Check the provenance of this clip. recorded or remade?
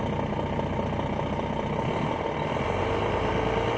recorded